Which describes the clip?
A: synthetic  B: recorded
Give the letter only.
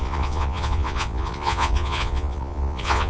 A